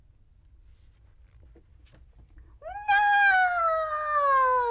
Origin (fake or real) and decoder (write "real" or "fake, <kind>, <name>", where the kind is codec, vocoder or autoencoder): real